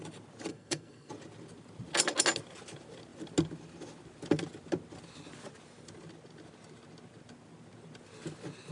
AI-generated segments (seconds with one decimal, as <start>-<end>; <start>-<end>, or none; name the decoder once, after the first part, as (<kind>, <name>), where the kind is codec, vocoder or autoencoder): 0.5-1.1 (codec, SNAC)